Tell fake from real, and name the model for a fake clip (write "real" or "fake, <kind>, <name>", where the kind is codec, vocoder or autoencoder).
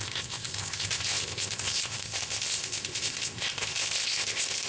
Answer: fake, codec, ZipCodec